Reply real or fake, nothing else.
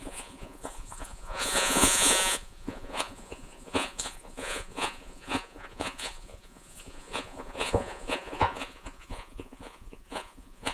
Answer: fake